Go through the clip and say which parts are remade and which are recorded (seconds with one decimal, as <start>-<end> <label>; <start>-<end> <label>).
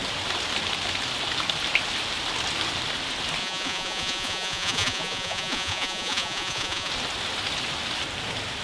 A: 0.0-3.4 recorded; 3.4-6.9 remade; 6.9-8.6 recorded